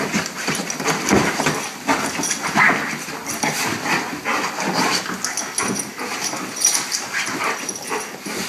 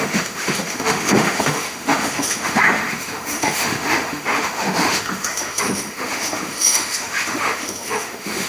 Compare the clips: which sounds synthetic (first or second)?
second